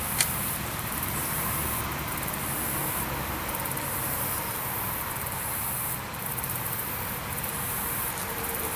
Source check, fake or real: fake